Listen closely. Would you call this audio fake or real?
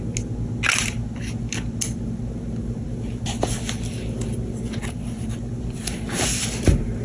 real